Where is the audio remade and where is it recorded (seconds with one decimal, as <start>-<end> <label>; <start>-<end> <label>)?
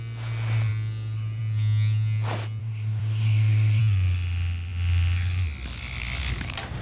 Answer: 0.0-2.6 recorded; 2.6-3.8 remade; 3.8-6.8 recorded